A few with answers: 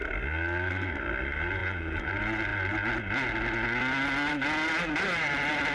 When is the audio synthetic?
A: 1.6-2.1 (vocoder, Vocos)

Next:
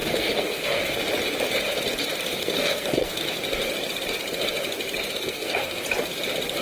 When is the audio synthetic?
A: 0.0-0.8 (codec, SNAC); 2.4-3.2; 5.2-5.8

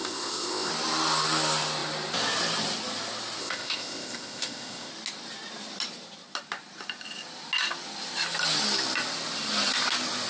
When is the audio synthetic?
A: 0.0-0.7 (codec, ZipCodec); 3.4-4.9

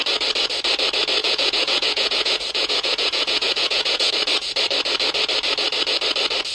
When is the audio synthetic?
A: 1.2-4.1 (vocoder, Vocos)

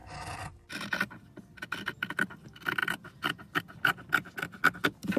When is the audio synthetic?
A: none

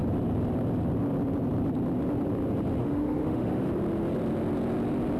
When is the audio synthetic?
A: 2.8-3.7 (autoencoder, DAC-VAE)

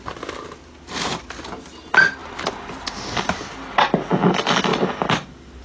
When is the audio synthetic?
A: none